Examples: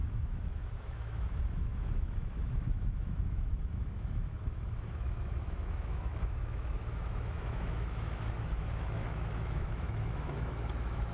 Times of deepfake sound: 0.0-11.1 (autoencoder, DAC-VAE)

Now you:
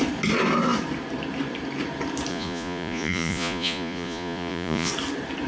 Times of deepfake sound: 2.3-4.9 (vocoder, Vocos)

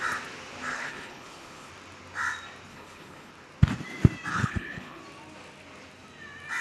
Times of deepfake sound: 0.7-1.7 (codec, HILCodec); 2.7-3.3; 4.3-5.0

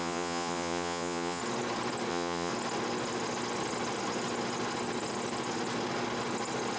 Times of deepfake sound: 0.0-1.4 (vocoder, Vocos); 2.1-2.5

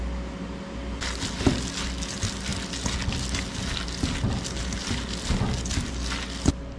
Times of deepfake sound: none

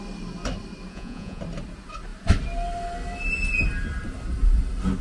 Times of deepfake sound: 0.9-1.4 (vocoder, Vocos)